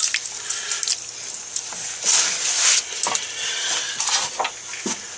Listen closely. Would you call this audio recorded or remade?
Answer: recorded